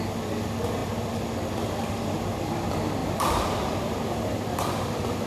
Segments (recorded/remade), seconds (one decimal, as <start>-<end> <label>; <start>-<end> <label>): 0.0-3.0 recorded; 3.0-5.3 remade